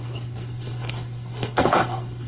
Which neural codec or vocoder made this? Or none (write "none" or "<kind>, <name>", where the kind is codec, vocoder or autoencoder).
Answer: codec, SNAC